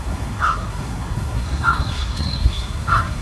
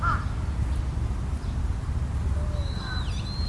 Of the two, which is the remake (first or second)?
first